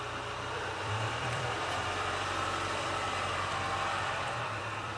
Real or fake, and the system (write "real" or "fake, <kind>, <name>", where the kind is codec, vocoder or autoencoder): fake, vocoder, BigVGAN v2